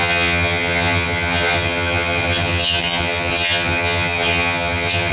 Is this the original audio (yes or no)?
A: no